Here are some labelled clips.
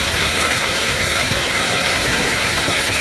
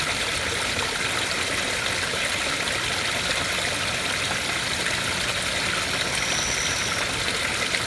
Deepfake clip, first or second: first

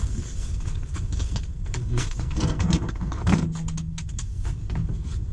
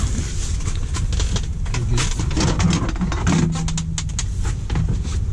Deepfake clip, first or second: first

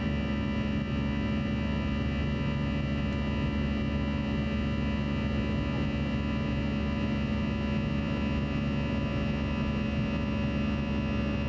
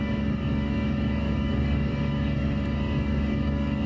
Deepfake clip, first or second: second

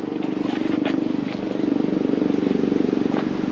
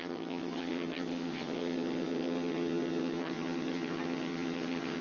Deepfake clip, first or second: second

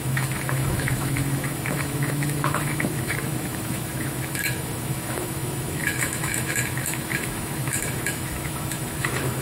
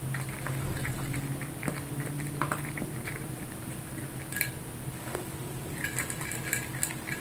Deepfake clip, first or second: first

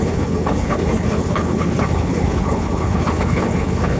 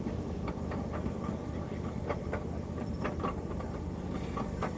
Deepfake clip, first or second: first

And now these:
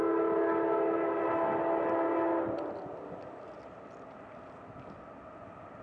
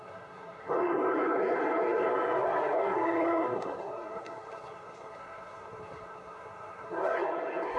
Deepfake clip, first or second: second